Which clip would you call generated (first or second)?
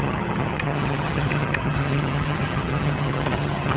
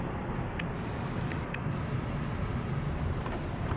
first